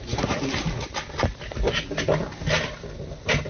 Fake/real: real